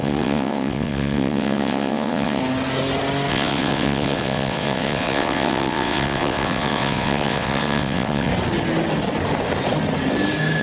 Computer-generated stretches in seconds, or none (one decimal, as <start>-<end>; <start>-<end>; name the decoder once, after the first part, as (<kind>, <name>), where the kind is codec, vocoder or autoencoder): 0.0-2.4 (vocoder, WaveNeXt); 3.3-8.3

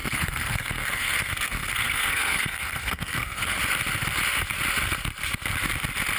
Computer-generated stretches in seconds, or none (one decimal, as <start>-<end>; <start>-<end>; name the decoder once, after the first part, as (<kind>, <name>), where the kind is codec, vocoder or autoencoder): 0.0-3.6 (codec, SNAC)